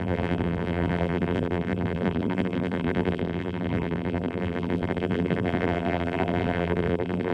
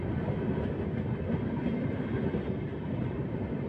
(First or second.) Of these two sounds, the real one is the second